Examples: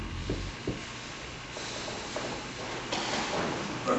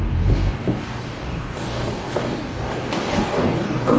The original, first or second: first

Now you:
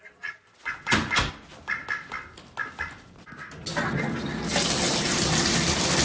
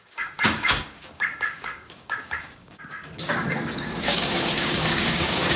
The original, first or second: first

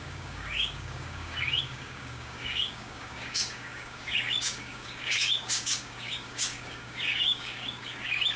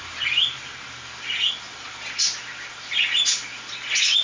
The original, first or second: second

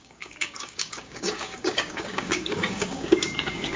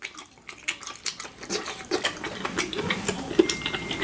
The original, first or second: second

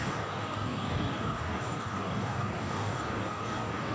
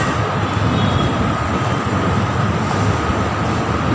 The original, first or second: second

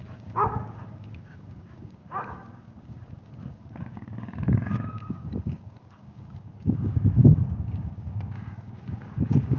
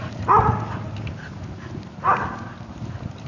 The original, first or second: second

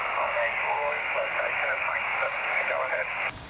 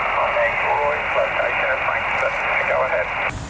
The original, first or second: second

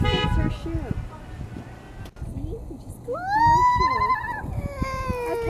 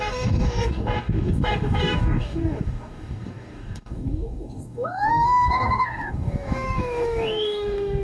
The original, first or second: first